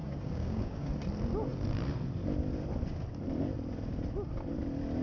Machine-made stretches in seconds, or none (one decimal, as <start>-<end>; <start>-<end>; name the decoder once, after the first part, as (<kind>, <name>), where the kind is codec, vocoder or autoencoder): 0.0-0.9 (codec, DAC)